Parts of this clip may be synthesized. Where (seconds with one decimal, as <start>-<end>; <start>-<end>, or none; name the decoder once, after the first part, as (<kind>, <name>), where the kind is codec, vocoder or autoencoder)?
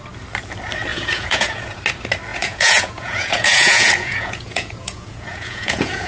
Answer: 0.9-1.8 (vocoder, Vocos); 2.3-6.1